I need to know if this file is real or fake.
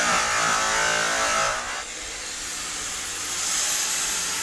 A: real